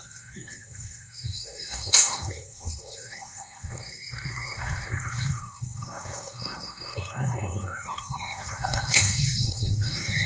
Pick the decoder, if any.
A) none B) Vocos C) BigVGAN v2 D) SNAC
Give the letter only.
D